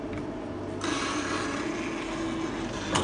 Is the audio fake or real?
real